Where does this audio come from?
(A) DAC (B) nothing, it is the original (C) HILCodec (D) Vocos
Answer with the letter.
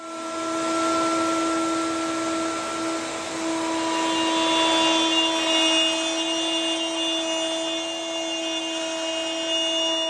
B